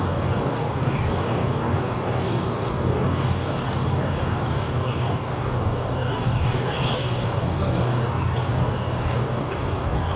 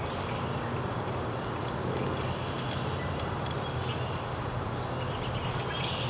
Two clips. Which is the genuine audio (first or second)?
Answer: second